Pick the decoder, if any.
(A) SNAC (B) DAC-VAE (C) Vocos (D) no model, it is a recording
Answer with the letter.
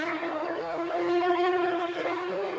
A